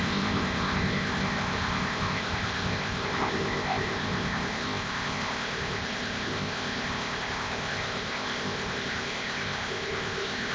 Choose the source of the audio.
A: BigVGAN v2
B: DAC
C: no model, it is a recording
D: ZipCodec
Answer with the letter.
D